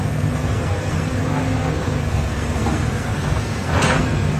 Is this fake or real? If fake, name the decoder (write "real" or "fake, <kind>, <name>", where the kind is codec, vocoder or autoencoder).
fake, codec, SNAC